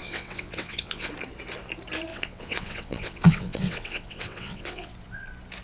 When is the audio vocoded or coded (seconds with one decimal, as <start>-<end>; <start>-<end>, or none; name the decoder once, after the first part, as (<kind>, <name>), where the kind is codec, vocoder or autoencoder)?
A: 0.0-1.1 (vocoder, WaveNeXt); 2.1-4.9